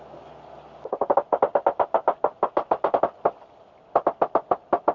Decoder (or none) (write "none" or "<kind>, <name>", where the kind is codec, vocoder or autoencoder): none